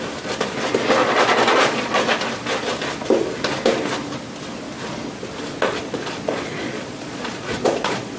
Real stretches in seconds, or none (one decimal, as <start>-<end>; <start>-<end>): 0.0-1.0; 2.0-5.5